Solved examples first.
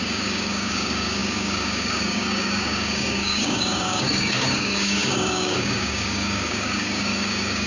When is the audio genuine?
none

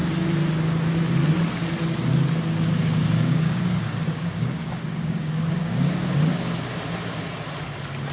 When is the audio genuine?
0.0-3.0; 6.6-8.1

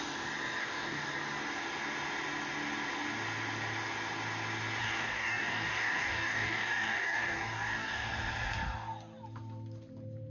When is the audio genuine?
0.0-0.6; 1.1-4.8; 8.1-10.3

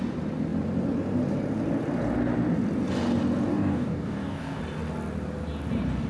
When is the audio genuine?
0.0-3.5; 4.6-6.1

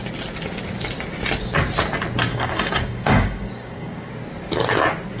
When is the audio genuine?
0.0-2.3; 4.1-5.2